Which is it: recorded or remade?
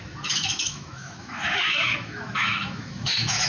remade